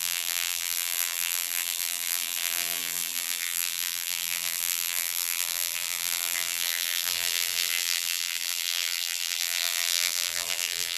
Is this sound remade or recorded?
remade